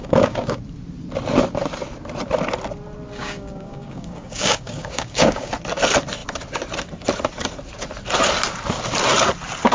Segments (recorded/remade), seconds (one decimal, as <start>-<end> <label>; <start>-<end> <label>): 0.0-0.6 remade; 0.6-3.2 recorded; 3.2-5.5 remade; 5.5-9.7 recorded